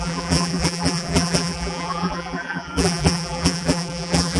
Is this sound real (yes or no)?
no